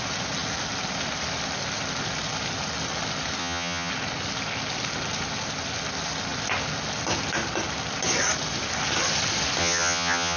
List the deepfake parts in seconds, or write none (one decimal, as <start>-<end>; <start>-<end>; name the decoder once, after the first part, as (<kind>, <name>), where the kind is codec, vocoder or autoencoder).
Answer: 3.4-3.9 (vocoder, HiFi-GAN); 9.6-10.4